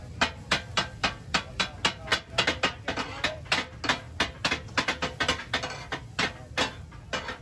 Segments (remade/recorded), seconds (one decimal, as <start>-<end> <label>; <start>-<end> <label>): 0.0-7.4 recorded